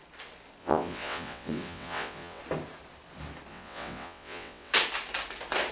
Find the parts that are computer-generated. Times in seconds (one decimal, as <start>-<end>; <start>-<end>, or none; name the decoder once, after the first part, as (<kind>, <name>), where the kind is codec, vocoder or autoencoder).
0.6-2.4 (vocoder, WaveNeXt); 3.5-4.7